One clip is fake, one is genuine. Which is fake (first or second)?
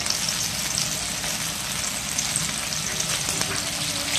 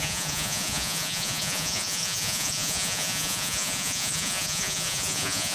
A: second